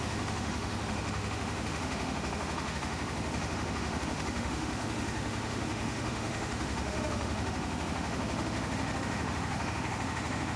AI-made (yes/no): yes